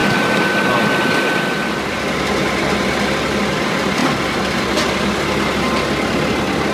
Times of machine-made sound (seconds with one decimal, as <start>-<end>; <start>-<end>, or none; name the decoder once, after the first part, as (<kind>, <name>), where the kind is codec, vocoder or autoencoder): none